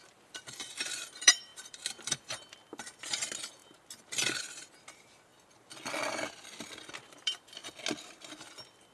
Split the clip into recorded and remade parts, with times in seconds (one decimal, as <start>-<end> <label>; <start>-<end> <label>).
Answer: 0.0-3.6 remade; 3.6-4.4 recorded; 4.4-5.3 remade; 5.3-7.0 recorded; 7.0-7.6 remade; 7.6-8.5 recorded; 8.5-8.9 remade